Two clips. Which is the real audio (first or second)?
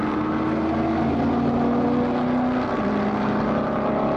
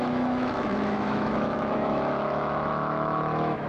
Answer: first